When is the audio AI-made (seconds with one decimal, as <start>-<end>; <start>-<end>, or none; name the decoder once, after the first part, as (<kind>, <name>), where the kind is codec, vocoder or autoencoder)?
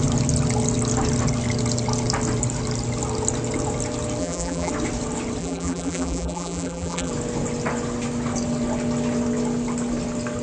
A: 4.2-4.7 (vocoder, BigVGAN v2); 5.4-7.1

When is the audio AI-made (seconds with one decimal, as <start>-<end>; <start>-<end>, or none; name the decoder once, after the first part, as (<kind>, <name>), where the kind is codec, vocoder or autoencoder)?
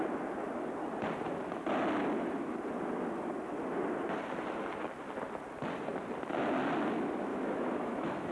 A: 7.3-8.3 (autoencoder, DAC-VAE)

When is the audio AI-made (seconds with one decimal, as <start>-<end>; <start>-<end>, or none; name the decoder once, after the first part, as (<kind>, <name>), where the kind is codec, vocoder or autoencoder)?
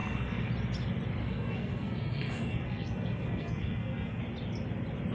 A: 0.0-0.5 (codec, SNAC); 1.2-4.2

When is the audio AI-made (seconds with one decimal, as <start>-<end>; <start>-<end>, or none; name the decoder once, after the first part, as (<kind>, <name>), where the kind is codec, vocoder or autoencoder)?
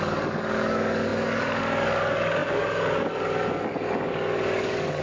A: 0.0-5.0 (codec, DAC)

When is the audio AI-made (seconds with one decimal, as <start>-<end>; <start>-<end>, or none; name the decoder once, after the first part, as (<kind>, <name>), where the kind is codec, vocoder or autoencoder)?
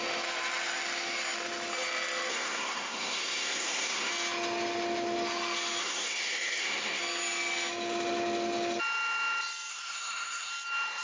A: 2.3-4.1 (codec, SNAC); 5.8-7.0; 9.7-10.5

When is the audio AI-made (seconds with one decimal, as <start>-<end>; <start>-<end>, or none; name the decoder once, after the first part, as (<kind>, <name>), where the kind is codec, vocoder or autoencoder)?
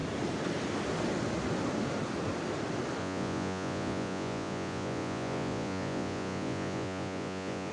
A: 3.0-7.7 (vocoder, Vocos)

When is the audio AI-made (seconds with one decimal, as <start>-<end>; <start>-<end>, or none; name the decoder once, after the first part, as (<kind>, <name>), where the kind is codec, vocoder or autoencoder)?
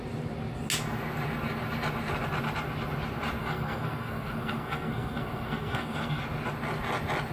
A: 3.4-6.2 (codec, SNAC)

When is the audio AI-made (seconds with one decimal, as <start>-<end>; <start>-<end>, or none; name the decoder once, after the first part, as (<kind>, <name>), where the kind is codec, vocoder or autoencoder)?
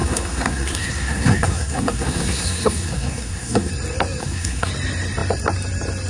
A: 0.0-3.7 (codec, SNAC); 4.2-4.7